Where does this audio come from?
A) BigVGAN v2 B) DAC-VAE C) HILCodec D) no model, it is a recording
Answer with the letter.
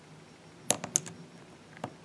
D